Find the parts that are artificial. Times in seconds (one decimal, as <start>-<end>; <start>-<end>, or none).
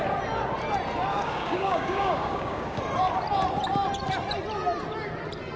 1.1-2.8